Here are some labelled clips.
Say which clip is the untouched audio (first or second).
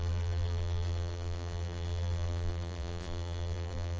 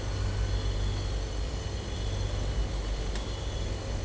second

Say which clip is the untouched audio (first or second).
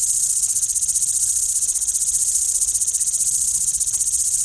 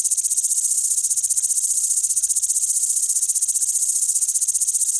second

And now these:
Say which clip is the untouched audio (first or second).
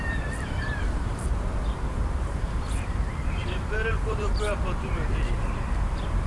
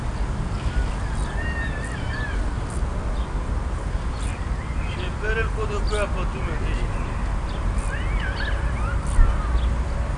second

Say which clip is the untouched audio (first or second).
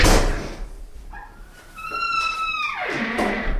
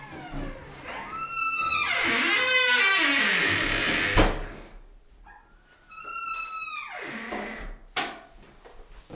second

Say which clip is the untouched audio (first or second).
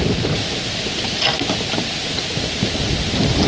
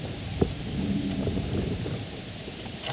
first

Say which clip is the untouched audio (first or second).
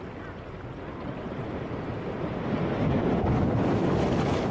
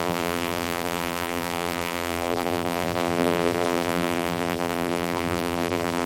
first